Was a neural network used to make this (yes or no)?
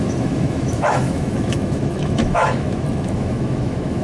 yes